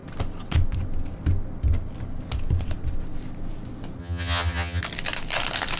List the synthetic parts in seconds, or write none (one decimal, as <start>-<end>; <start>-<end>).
4.0-4.8